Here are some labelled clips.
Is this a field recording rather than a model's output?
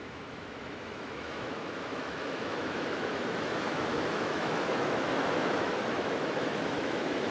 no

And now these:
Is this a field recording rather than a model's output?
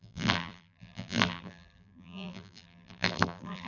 no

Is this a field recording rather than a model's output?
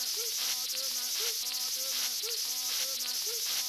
yes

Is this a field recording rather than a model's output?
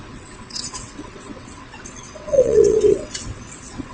no